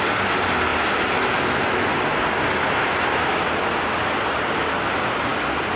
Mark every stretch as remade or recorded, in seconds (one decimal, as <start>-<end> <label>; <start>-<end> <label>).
0.0-5.8 recorded